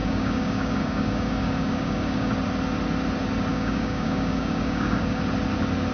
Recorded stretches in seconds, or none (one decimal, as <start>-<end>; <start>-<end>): 2.3-3.5; 5.2-5.9